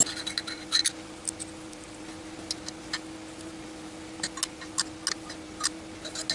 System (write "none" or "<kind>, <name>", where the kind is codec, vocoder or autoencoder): none